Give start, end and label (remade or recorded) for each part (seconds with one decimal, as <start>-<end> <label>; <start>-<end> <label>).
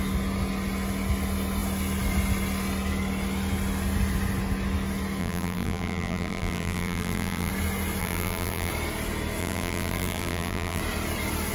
0.0-5.2 recorded; 5.2-7.5 remade; 7.5-8.0 recorded; 8.0-8.7 remade; 8.7-9.4 recorded; 9.4-10.8 remade; 10.8-11.5 recorded